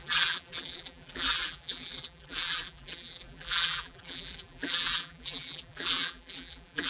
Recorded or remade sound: remade